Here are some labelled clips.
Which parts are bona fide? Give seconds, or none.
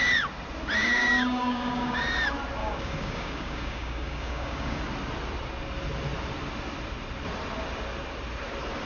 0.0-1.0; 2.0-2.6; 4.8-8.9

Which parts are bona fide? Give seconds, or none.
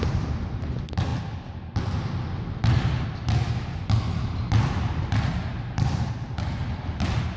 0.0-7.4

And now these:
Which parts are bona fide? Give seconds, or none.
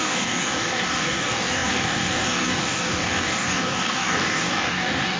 none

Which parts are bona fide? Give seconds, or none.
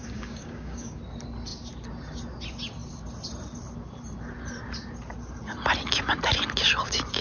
1.0-7.2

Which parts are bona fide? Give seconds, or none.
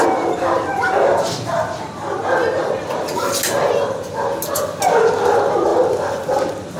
0.0-6.8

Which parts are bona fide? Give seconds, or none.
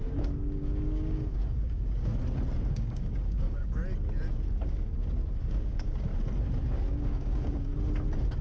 2.1-2.7; 3.8-5.4; 6.1-7.0; 7.7-8.4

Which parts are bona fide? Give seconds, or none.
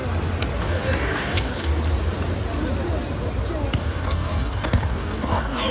0.0-0.6; 1.7-3.8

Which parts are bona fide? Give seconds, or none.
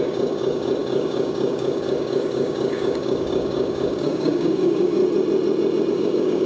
5.0-5.9